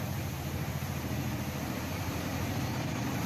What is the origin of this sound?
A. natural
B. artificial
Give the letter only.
B